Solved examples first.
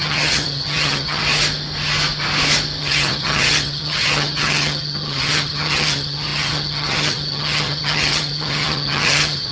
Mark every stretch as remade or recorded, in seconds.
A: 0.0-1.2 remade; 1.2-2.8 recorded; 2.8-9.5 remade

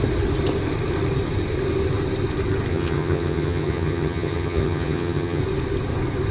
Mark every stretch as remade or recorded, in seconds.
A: 0.0-2.7 recorded; 2.7-5.4 remade; 5.4-6.3 recorded

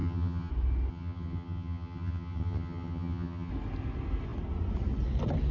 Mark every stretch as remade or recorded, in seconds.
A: 0.0-0.5 remade; 0.5-0.9 recorded; 0.9-3.5 remade; 3.5-5.5 recorded

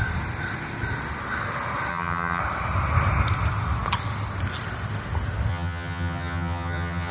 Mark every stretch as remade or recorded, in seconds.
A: 0.0-1.9 recorded; 1.9-2.4 remade; 2.4-5.5 recorded; 5.5-7.1 remade

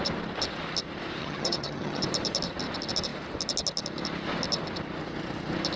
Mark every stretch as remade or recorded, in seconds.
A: 0.0-1.2 recorded; 1.2-2.0 remade; 2.0-5.8 recorded

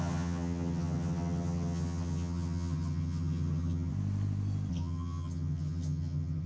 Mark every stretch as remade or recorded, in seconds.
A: 0.0-3.9 remade; 3.9-4.7 recorded; 4.7-6.5 remade

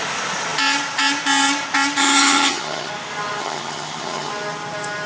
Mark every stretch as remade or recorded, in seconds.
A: 0.0-2.0 recorded; 2.0-2.9 remade; 2.9-3.4 recorded; 3.4-4.3 remade; 4.3-5.1 recorded

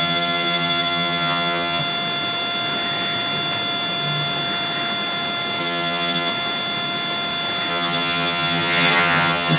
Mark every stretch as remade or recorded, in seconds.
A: 0.0-1.8 remade; 1.8-5.6 recorded; 5.6-6.3 remade; 6.3-7.7 recorded; 7.7-9.6 remade